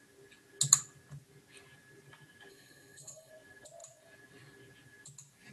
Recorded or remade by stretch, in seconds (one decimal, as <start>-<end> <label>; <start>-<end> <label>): 0.0-2.5 recorded; 2.5-3.3 remade; 3.3-5.5 recorded